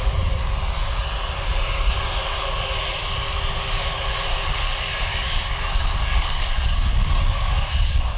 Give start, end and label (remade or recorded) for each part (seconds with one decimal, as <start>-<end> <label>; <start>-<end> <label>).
0.0-4.3 recorded; 4.3-8.2 remade